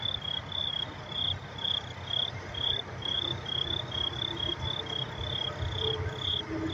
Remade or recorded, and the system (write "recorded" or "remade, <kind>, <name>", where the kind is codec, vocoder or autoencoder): recorded